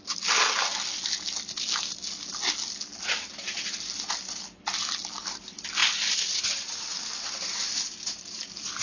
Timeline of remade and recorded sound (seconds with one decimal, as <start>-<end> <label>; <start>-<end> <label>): 0.0-8.8 recorded